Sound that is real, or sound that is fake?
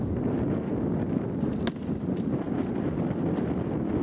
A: real